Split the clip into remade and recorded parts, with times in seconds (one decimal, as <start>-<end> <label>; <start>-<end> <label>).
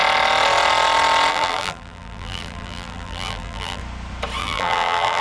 0.0-1.3 recorded; 1.3-3.8 remade; 3.8-4.4 recorded; 4.4-5.2 remade